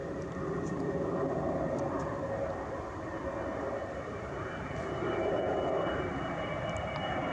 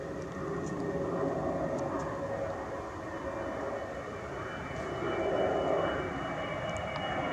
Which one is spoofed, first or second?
first